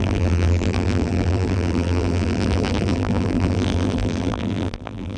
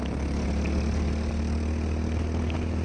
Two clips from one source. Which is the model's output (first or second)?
first